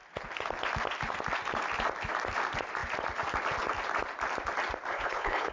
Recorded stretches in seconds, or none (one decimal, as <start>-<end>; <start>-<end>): 0.0-4.9